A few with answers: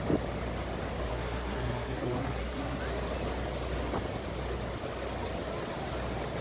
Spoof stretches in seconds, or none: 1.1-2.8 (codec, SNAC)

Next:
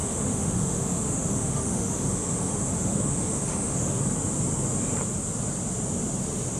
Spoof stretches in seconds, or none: 0.0-4.0 (autoencoder, DAC-VAE)

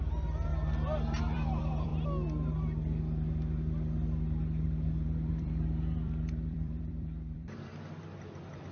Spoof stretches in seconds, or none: 0.0-0.5 (vocoder, BigVGAN v2); 1.2-1.9; 5.3-7.7

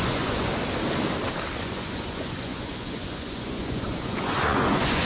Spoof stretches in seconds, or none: 0.0-0.5 (vocoder, Vocos); 1.6-5.0

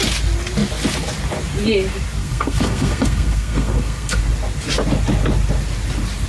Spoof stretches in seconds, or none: 2.2-4.2 (codec, SNAC)

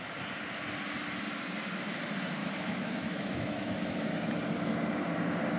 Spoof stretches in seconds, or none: 2.4-4.2 (autoencoder, DAC-VAE)

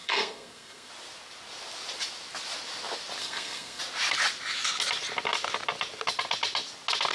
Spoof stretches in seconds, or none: 0.0-0.9 (codec, SNAC); 3.2-3.8

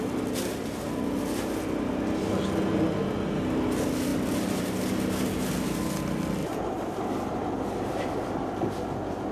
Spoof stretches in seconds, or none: 6.4-9.3 (vocoder, BigVGAN v2)